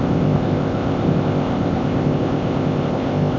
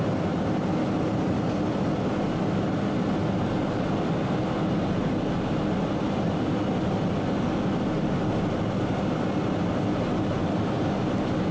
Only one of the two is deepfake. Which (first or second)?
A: first